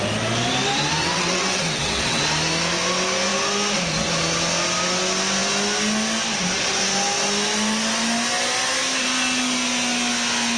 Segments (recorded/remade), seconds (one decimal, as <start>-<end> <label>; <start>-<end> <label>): 0.0-1.0 recorded; 1.0-2.2 remade; 2.2-10.6 recorded